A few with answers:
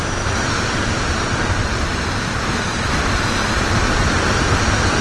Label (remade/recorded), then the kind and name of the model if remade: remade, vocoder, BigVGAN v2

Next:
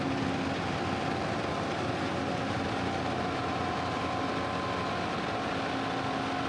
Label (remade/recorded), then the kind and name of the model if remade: recorded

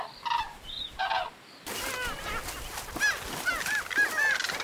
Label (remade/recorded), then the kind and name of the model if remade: recorded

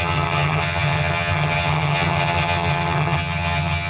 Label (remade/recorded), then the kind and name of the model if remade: remade, vocoder, HiFi-GAN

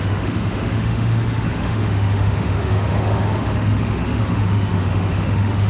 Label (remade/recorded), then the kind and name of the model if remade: remade, autoencoder, DAC-VAE